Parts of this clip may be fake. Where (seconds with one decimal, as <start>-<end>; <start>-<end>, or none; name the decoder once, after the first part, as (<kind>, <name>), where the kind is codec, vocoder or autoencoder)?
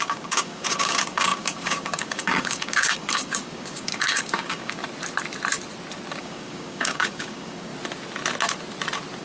0.0-4.8 (codec, DAC); 6.2-7.7